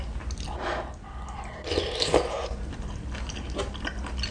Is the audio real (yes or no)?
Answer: yes